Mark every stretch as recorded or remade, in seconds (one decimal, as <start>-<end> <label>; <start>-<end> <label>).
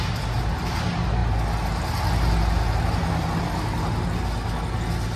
0.0-5.2 recorded